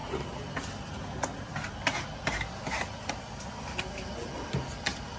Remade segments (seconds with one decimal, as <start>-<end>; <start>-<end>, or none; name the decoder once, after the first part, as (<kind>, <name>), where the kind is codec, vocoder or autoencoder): none